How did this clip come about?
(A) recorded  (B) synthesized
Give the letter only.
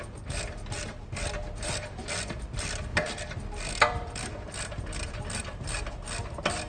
B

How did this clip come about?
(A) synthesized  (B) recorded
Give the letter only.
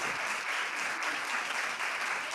A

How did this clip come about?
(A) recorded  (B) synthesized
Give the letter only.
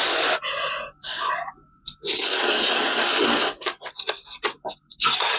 A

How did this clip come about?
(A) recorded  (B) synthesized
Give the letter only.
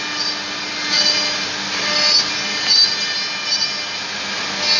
A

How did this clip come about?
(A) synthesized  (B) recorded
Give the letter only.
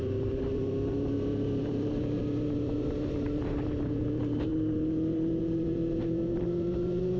A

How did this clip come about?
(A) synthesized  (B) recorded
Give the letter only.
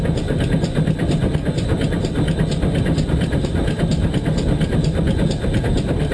B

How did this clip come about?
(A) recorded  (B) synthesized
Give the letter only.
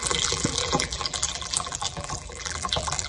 B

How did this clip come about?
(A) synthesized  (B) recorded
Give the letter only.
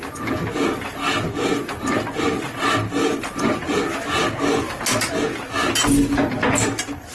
B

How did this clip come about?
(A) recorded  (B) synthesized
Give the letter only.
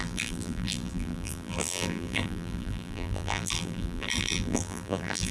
B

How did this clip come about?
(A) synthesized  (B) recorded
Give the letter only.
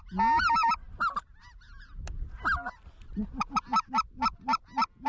B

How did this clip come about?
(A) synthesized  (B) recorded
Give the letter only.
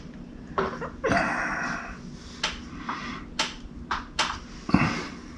B